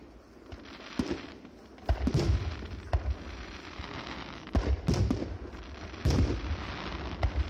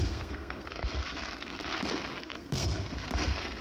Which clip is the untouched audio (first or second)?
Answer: first